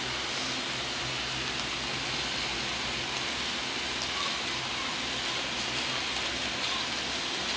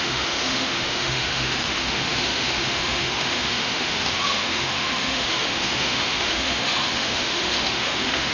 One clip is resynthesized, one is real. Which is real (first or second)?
first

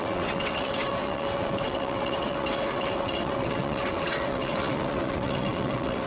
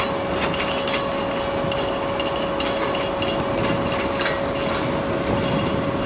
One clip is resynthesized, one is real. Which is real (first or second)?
second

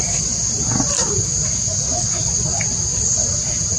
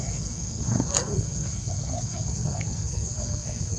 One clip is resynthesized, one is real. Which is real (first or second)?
first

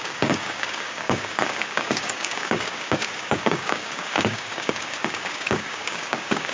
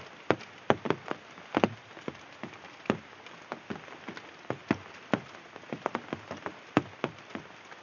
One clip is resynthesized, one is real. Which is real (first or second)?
second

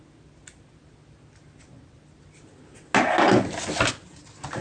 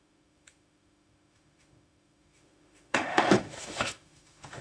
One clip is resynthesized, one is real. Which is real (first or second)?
first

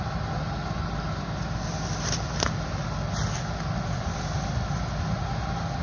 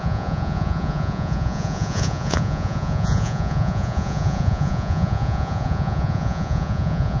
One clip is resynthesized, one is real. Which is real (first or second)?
first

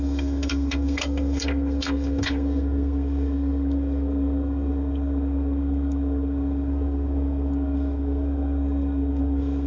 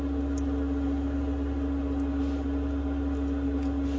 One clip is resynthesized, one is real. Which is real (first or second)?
second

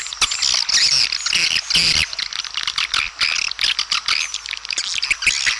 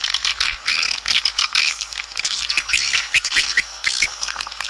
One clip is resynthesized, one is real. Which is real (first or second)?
first